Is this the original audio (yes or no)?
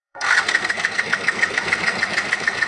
no